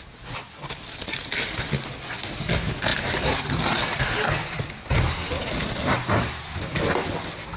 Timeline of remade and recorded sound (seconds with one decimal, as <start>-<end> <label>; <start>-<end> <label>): 0.0-7.6 recorded